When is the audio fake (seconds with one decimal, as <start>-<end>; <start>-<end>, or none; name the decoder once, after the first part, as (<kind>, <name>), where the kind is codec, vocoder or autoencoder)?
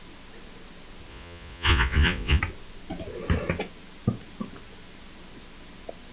1.1-2.4 (vocoder, Vocos)